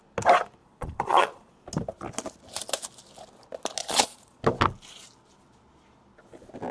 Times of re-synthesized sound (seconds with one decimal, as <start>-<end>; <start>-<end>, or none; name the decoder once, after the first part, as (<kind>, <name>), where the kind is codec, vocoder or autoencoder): 0.6-1.5 (vocoder, Vocos); 3.8-4.4